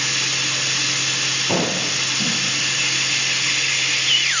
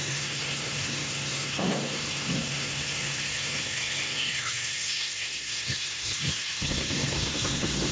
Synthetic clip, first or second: second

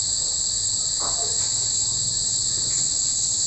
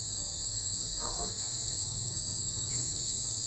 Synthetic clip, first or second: second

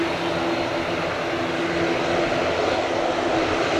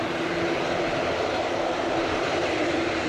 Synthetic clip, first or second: second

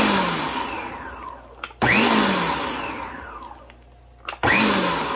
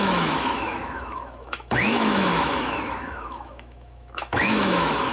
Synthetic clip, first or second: second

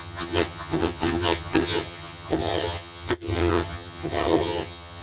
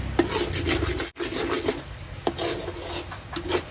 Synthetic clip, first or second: first